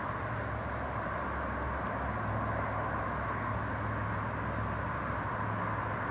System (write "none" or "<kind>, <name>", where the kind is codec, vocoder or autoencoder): none